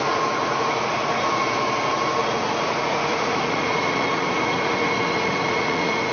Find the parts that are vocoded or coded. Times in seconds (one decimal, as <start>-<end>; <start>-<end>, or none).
0.0-6.1